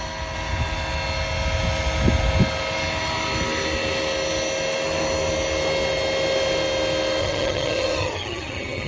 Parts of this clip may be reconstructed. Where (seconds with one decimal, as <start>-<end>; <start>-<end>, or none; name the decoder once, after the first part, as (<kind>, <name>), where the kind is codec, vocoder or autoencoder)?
7.2-8.9 (vocoder, HiFi-GAN)